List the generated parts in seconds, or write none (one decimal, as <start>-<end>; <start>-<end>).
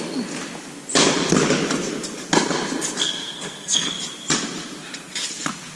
3.0-3.9